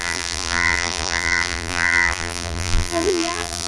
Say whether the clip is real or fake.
fake